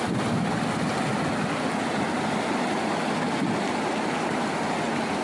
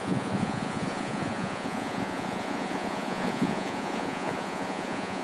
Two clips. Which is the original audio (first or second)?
first